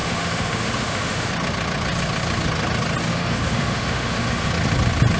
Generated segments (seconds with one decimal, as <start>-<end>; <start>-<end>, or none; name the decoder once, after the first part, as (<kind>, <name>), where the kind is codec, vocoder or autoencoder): 0.0-1.3 (autoencoder, DAC-VAE); 3.1-4.5